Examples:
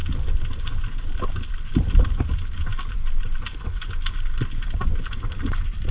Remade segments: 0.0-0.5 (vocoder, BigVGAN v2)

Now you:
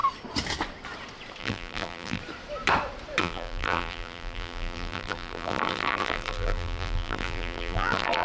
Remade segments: 1.4-2.2 (vocoder, BigVGAN v2); 3.2-8.2